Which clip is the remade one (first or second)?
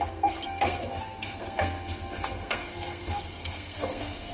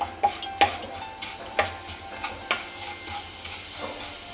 first